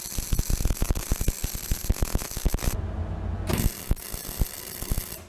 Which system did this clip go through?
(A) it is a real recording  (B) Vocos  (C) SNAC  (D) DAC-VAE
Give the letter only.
A